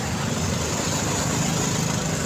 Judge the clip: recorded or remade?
recorded